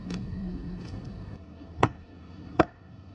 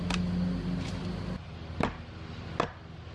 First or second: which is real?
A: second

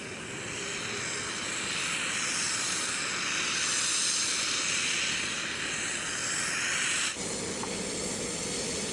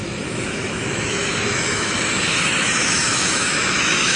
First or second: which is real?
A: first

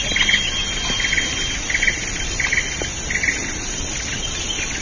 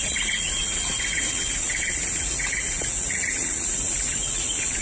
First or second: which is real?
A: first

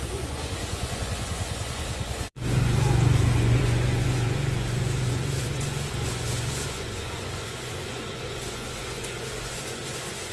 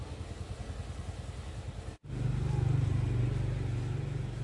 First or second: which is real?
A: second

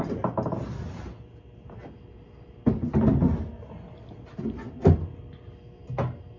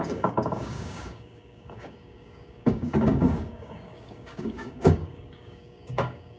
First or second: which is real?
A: first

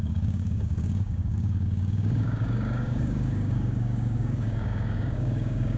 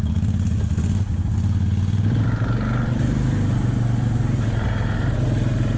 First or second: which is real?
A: second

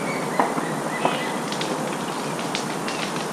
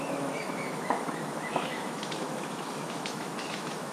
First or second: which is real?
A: first